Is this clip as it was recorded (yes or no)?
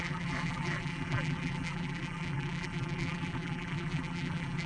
no